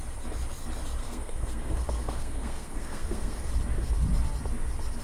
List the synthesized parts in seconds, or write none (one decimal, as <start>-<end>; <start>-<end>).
1.0-3.5